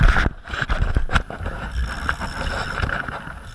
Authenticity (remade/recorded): recorded